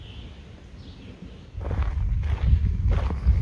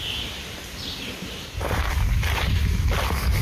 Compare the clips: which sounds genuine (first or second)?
first